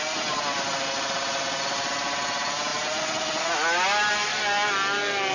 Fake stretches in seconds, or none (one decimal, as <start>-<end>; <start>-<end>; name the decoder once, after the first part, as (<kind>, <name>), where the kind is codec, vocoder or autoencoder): none